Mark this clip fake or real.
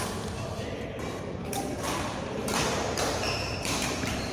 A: fake